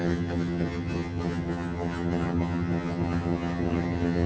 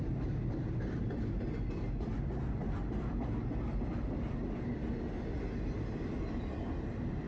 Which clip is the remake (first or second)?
first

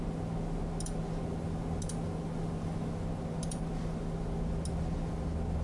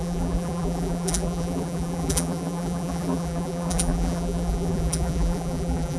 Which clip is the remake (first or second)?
second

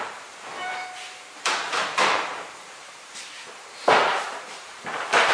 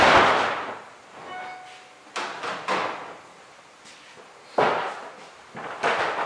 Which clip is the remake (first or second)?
first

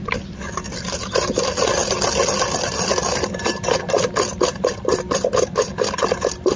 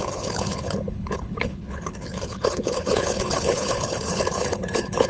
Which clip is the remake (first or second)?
second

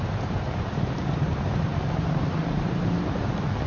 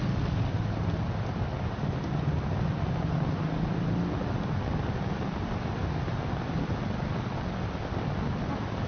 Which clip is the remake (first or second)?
first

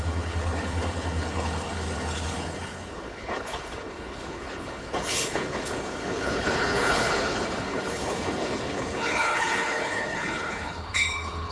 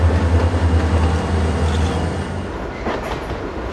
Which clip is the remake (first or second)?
first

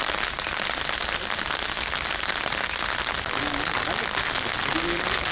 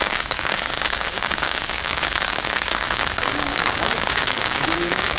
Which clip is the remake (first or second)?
second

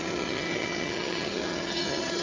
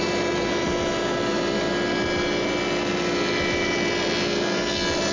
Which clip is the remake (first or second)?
first